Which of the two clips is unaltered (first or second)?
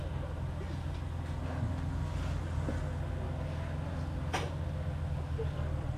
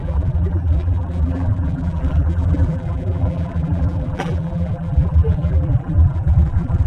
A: first